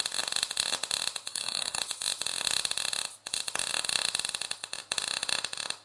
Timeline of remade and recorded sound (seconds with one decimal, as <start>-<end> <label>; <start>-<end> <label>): 0.0-1.3 recorded; 1.3-1.8 remade; 1.8-5.8 recorded